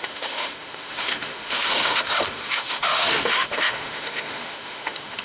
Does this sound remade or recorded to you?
remade